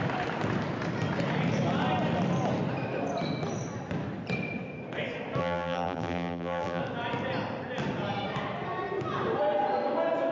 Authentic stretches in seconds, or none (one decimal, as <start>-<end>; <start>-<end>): 0.0-5.4; 6.8-10.3

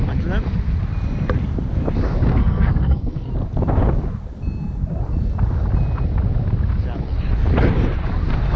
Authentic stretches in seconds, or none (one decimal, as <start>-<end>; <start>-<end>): 0.0-2.3; 3.3-8.6

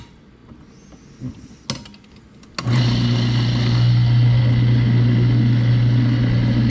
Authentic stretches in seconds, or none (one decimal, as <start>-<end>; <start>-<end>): 0.0-6.7

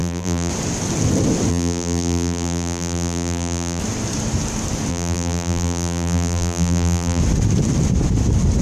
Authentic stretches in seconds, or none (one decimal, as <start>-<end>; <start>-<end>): 0.5-1.5; 3.8-4.9; 7.2-8.6

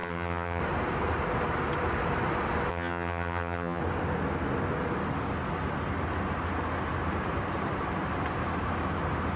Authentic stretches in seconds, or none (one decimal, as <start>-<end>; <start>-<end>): 0.6-2.7; 3.8-9.4

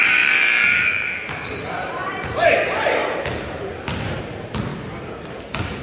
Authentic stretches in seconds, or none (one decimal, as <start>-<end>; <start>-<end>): 3.0-4.0; 4.7-5.3

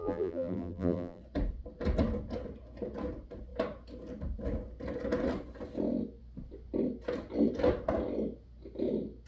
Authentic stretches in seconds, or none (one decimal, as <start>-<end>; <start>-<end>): 1.2-9.3

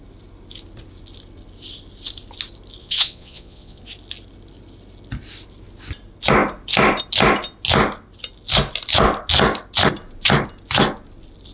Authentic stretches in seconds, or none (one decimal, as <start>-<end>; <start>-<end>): 0.0-2.8; 3.8-11.5